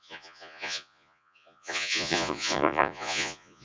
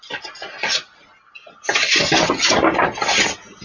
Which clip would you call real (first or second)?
second